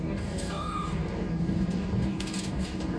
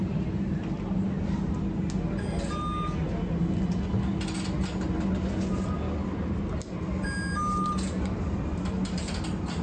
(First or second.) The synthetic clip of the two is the first